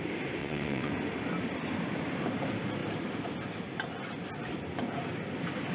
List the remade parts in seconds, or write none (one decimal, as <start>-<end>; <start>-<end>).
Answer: 0.4-0.9